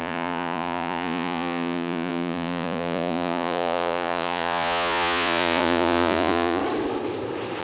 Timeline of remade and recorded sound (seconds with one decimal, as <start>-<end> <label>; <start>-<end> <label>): 0.0-6.6 remade; 6.6-7.6 recorded